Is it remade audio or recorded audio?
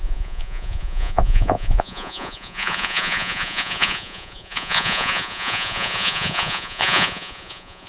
remade